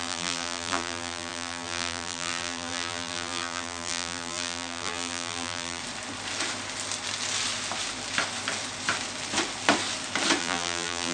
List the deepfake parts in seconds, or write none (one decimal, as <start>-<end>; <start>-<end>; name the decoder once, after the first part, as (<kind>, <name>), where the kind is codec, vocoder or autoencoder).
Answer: 0.0-5.8 (vocoder, BigVGAN v2); 10.4-11.1